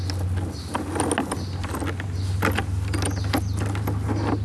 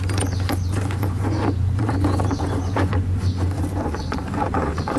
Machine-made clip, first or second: second